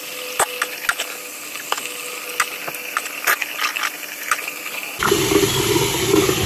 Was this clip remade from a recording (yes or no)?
no